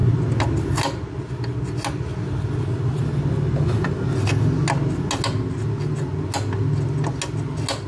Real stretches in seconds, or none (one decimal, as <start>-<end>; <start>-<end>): 0.0-7.9